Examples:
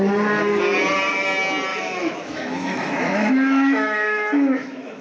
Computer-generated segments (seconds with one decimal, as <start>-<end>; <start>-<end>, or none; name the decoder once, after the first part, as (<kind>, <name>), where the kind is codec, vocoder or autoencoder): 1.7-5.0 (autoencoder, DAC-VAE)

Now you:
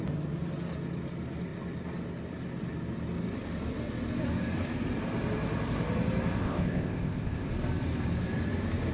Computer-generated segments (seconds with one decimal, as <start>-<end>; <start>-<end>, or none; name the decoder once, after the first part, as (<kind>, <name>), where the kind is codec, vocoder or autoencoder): 6.4-7.5 (codec, ZipCodec)

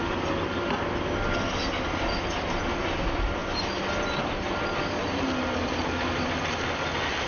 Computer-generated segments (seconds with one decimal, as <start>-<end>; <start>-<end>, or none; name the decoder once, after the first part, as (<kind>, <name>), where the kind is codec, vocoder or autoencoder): none

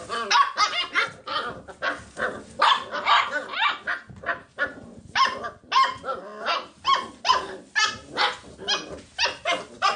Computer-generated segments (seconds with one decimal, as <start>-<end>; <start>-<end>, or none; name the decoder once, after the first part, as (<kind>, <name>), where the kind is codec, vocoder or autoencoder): none

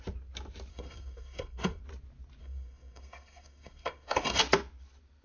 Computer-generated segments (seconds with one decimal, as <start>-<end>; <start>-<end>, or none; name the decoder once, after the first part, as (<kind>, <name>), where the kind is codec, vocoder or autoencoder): 0.7-1.8 (codec, SNAC); 2.4-4.4

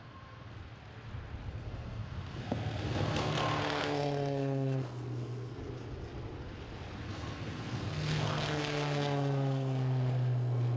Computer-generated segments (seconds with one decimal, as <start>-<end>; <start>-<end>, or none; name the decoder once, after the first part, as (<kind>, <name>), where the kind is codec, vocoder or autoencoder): 0.0-0.7 (codec, SNAC); 1.5-5.6; 7.1-10.8